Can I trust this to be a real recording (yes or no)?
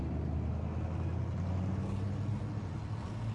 yes